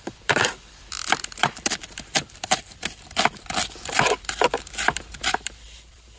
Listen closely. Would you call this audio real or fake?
fake